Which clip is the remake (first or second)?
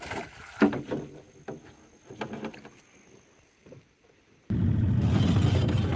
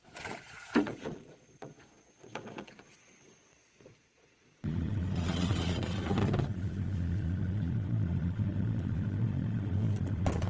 second